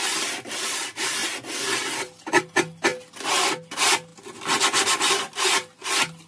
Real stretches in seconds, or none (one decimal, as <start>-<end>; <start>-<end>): 0.0-6.3